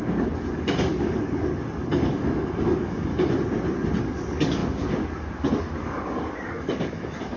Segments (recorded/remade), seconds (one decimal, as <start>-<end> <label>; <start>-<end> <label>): 0.0-3.1 remade; 3.1-4.0 recorded; 4.0-7.4 remade

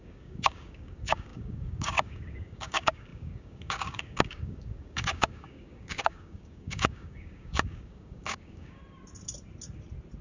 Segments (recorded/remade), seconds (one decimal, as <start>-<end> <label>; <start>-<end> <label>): 0.0-8.8 remade; 8.8-10.2 recorded

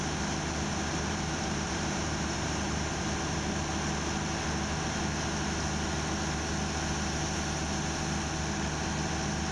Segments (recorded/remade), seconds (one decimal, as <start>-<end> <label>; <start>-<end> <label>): 0.0-0.7 recorded; 0.7-3.7 remade; 3.7-9.5 recorded

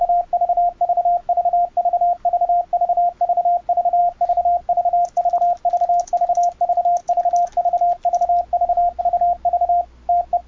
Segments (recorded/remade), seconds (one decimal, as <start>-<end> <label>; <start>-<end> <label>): 0.0-10.5 recorded

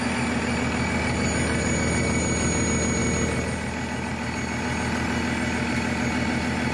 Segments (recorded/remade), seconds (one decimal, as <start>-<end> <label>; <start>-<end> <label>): 0.0-6.7 recorded

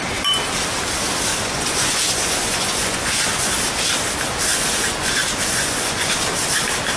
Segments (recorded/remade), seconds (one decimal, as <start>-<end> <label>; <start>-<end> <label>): 0.0-1.3 recorded; 1.3-3.5 remade; 3.5-4.5 recorded; 4.5-6.1 remade; 6.1-7.0 recorded

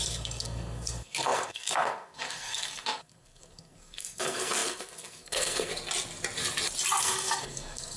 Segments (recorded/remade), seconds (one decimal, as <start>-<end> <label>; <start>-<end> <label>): 0.0-5.7 remade; 5.7-7.0 recorded; 7.0-8.0 remade